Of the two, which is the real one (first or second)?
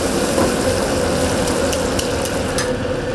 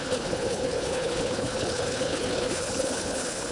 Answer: first